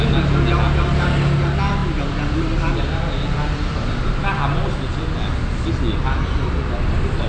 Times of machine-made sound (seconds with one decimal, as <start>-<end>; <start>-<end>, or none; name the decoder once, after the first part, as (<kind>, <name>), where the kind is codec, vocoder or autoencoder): none